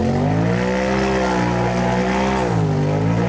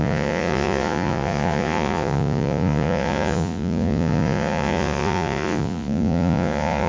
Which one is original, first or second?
first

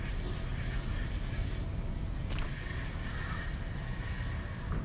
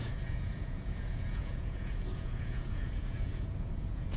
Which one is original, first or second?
first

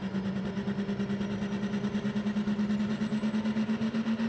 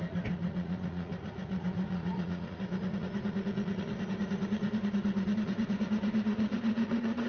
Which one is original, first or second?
first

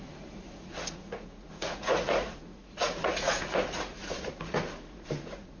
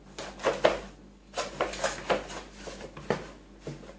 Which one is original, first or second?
second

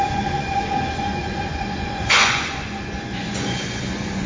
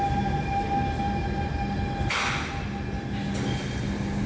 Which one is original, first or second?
second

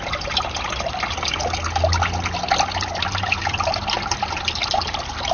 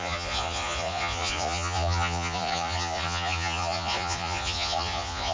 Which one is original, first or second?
first